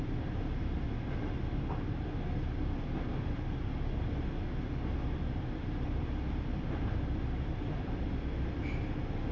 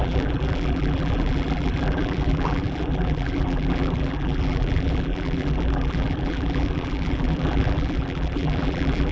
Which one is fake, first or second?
second